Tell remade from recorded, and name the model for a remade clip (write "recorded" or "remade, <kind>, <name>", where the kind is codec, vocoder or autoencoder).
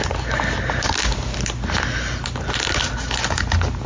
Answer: recorded